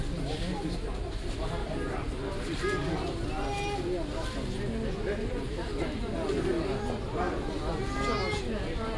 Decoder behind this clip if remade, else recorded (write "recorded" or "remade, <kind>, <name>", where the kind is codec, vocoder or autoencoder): recorded